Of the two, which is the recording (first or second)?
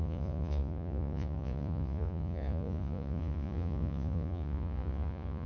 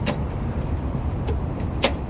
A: second